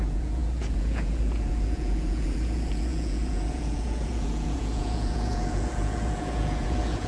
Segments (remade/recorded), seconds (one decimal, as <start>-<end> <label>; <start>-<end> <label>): 0.0-7.1 remade